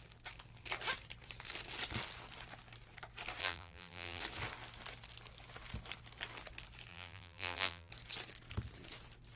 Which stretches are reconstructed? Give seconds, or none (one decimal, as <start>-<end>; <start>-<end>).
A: 3.4-4.2; 6.9-7.9